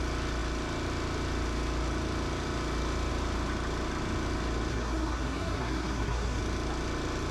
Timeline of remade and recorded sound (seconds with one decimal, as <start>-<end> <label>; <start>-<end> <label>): 0.0-4.7 recorded; 4.7-6.4 remade; 6.4-7.3 recorded